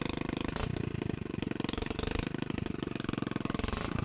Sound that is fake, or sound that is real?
real